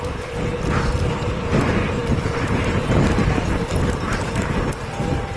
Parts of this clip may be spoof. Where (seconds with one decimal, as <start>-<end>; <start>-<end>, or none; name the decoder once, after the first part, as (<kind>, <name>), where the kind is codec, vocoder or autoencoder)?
none